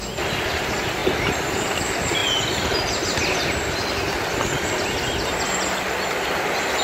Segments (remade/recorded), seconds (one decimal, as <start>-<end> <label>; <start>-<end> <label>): 0.0-6.8 recorded